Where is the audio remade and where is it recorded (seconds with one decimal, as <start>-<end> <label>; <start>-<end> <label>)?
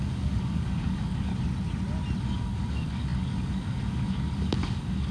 0.0-1.3 remade; 1.3-2.2 recorded; 2.2-5.1 remade